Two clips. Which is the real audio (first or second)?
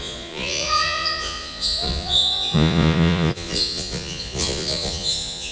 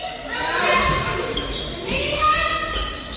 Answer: second